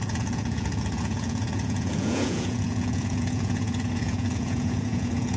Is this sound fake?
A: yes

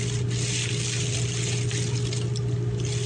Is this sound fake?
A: no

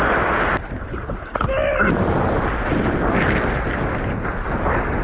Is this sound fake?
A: no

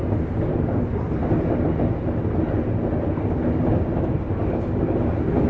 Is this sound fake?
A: no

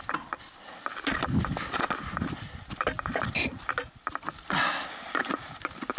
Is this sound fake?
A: no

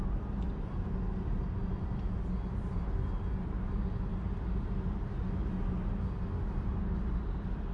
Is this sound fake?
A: no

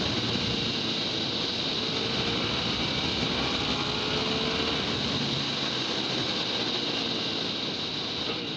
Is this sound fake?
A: no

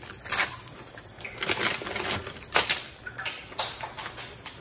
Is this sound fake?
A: no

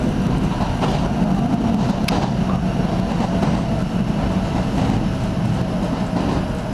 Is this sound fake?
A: no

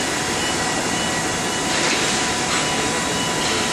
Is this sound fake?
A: no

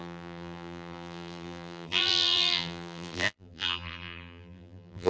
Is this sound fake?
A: yes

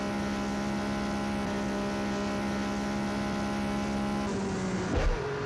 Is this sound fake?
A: no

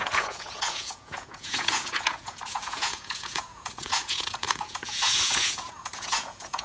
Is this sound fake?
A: yes